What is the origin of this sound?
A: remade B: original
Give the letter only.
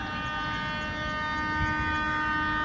B